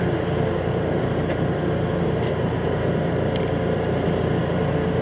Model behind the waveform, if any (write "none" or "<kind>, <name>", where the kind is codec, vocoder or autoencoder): none